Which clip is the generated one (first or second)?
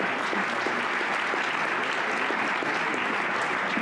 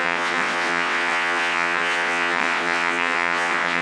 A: second